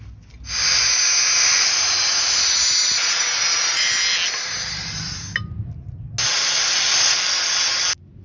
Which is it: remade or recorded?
recorded